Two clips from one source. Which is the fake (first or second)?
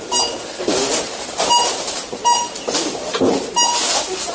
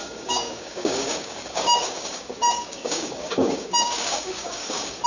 second